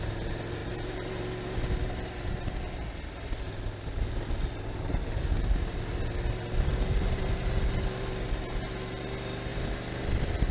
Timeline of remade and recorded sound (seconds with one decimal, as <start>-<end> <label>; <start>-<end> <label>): 0.0-10.5 recorded